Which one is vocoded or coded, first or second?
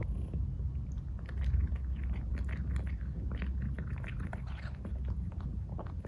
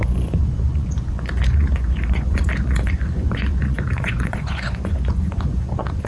second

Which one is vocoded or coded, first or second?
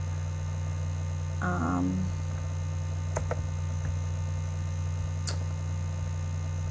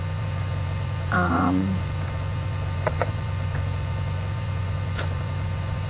second